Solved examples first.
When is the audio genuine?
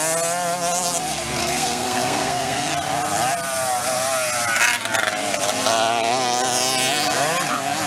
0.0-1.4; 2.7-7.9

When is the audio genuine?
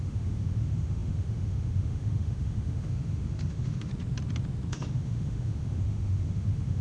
3.9-4.7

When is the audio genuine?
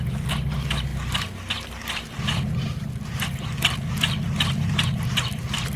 0.9-1.5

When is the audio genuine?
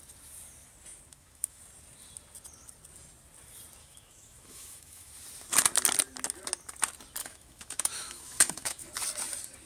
0.0-1.1; 1.6-3.8; 5.1-7.2; 8.9-9.7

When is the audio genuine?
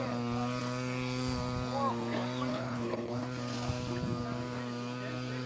0.0-2.5; 3.2-5.5